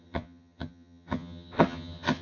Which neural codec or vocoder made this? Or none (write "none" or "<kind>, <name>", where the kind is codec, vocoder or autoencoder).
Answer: vocoder, HiFi-GAN